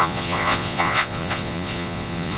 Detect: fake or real fake